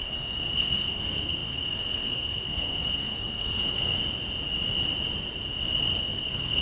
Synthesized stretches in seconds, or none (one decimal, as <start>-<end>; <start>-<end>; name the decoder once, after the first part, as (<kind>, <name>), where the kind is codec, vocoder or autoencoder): 0.0-4.0 (codec, SNAC); 6.0-6.6